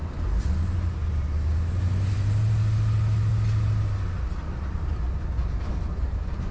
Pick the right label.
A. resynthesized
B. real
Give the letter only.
B